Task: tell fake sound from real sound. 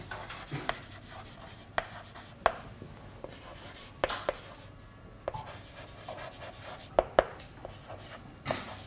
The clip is real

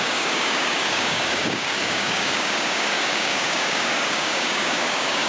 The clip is fake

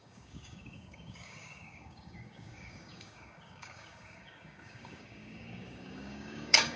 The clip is fake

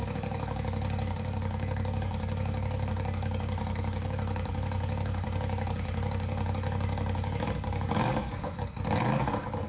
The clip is fake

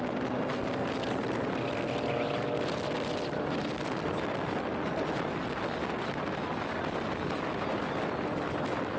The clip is real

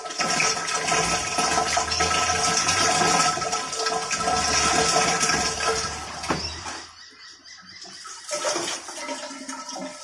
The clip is real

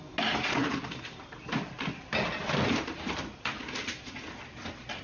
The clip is real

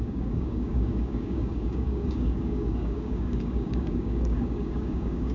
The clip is fake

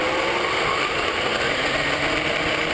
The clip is real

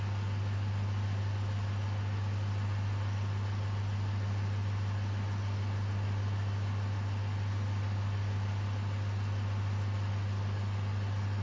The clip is real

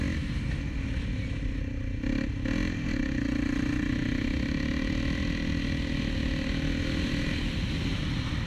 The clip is real